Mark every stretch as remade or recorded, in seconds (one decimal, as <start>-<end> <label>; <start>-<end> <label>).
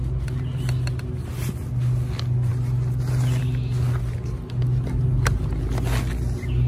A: 0.0-6.7 recorded